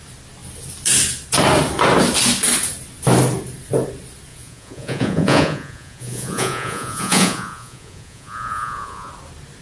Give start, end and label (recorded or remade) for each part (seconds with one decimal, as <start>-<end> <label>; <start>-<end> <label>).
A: 0.0-4.3 recorded; 4.3-9.1 remade; 9.1-9.6 recorded